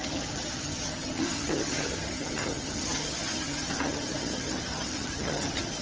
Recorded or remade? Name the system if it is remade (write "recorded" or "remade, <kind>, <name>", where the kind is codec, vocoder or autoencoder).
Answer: remade, vocoder, HiFi-GAN